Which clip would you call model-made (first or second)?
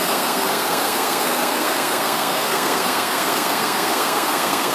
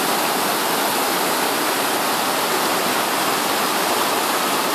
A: first